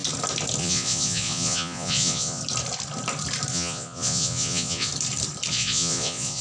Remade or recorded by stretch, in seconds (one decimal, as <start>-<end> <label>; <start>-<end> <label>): 0.0-0.6 recorded; 0.6-2.4 remade; 2.4-3.5 recorded; 3.5-4.9 remade; 4.9-5.5 recorded; 5.5-6.4 remade